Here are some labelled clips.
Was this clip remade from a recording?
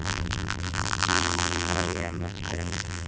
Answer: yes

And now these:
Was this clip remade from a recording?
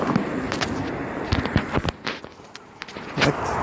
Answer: no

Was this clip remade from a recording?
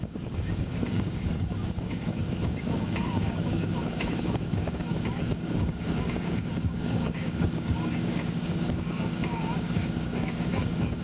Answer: yes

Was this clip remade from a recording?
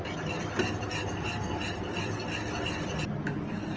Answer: no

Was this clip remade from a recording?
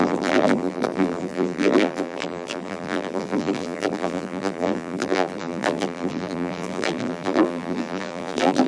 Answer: yes